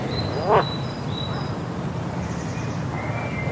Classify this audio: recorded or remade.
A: recorded